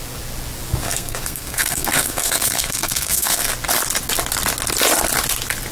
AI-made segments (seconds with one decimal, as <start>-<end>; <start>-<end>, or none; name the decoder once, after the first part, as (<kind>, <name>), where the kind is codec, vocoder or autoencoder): 0.8-3.5 (codec, SNAC)